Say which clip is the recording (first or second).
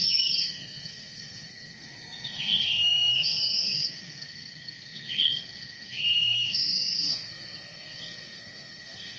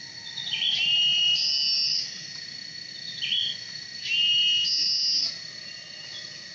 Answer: second